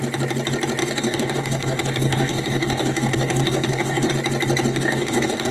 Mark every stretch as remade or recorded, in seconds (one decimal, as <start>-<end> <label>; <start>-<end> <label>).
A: 0.0-0.8 recorded; 0.8-4.1 remade; 4.1-4.7 recorded; 4.7-5.5 remade